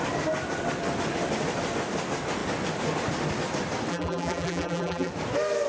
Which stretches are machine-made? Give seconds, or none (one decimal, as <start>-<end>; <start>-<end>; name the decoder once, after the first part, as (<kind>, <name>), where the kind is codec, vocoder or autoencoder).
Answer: 3.9-5.1 (vocoder, BigVGAN v2)